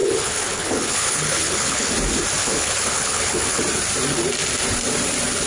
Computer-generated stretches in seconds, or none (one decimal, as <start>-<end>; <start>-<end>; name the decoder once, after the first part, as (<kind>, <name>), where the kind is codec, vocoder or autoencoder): 0.0-1.9 (codec, HILCodec); 2.4-3.6